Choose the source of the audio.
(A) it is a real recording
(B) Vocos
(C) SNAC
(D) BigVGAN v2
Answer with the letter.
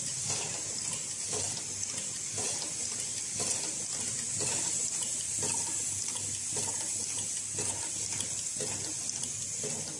A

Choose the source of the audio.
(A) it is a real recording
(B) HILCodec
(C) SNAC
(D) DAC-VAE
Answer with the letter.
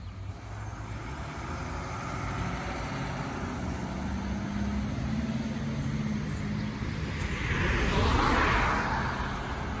A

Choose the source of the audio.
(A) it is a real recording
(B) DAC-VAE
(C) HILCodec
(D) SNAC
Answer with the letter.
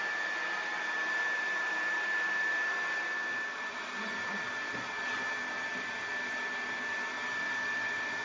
A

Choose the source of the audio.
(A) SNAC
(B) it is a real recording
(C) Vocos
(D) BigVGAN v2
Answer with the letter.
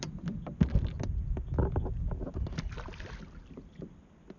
B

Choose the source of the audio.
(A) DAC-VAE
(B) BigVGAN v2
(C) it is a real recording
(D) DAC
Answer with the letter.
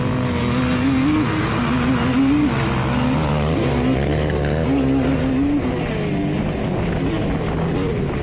C